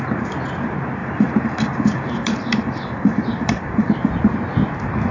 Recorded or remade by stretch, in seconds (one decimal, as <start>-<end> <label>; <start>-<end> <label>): 0.0-1.0 recorded; 1.0-4.1 remade; 4.1-5.1 recorded